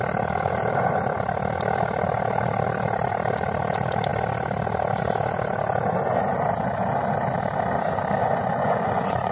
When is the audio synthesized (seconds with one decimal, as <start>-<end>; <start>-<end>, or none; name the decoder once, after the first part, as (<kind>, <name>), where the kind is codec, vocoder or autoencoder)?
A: 8.2-9.3 (vocoder, Vocos)

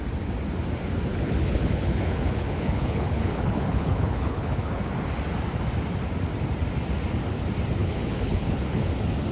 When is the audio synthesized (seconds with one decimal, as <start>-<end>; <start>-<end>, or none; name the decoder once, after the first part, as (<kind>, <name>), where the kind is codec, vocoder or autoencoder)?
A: 1.1-4.9 (codec, HILCodec); 7.8-8.9

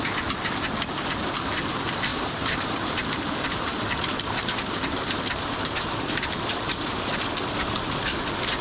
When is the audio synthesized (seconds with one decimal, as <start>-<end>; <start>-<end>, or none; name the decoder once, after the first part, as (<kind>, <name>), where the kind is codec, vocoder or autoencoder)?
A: 2.1-6.9 (vocoder, BigVGAN v2)

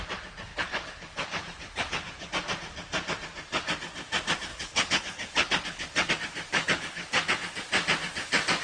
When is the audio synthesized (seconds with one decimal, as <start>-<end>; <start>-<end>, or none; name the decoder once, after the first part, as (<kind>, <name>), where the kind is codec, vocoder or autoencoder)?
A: 0.5-2.3 (codec, HILCodec); 4.5-6.1; 6.5-7.3

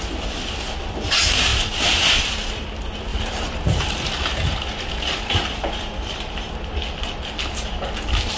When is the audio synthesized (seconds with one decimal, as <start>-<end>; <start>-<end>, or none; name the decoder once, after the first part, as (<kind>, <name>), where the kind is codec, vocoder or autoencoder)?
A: 3.1-3.8 (vocoder, BigVGAN v2)